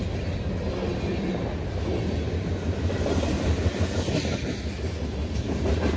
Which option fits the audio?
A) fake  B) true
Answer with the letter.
B